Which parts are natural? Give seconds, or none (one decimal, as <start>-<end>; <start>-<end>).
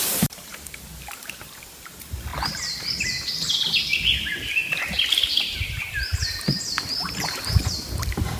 2.3-7.0